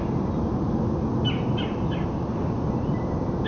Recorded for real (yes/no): yes